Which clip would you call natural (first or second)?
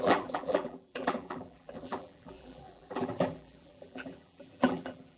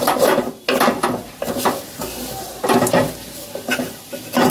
second